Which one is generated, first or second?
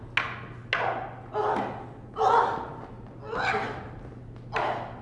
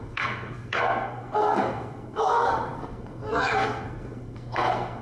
second